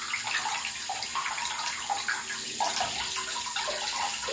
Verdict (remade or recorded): recorded